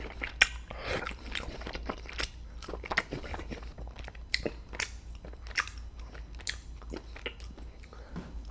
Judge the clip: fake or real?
real